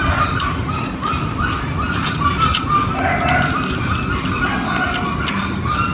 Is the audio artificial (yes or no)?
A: no